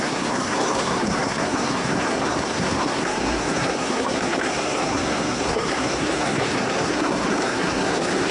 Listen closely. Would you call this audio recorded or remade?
remade